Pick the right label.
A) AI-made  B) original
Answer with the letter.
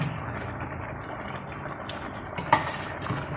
B